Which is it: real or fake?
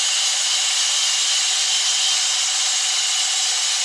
real